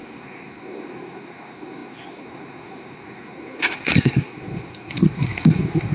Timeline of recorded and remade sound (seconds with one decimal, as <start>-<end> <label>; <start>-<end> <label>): 0.0-5.9 remade